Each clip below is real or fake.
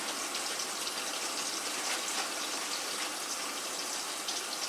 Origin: real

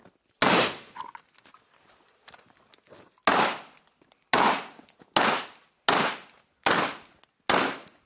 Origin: real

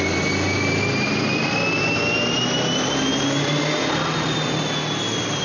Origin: real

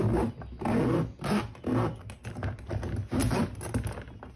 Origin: real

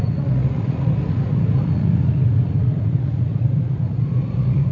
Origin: fake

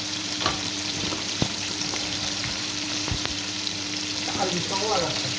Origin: fake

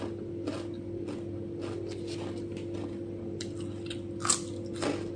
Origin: real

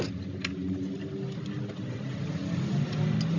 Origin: real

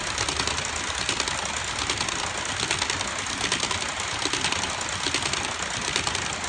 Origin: real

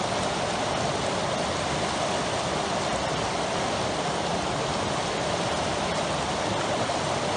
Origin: real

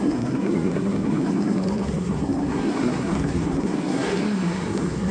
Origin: fake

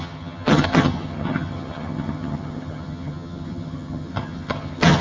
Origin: fake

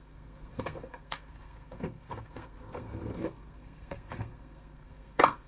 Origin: fake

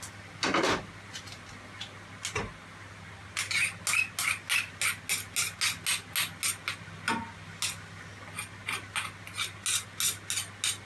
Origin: real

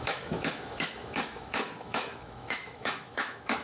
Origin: fake